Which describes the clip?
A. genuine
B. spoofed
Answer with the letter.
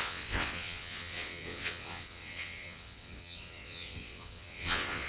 B